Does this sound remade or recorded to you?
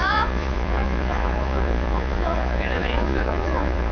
remade